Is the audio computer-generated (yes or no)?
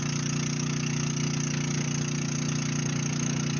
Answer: no